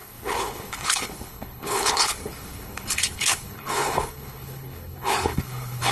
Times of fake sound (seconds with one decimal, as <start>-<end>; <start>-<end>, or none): 0.0-5.9